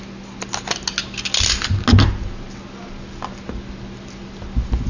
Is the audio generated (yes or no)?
no